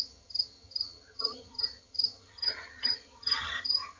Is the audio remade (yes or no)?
yes